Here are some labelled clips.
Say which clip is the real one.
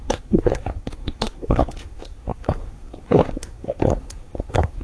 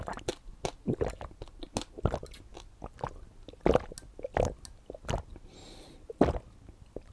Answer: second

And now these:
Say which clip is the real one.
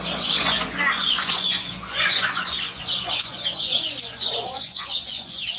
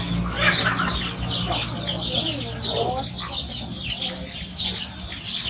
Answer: second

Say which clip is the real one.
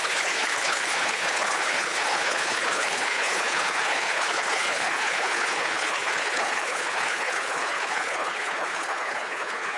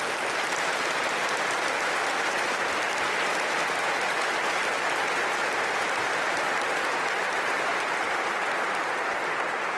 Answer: second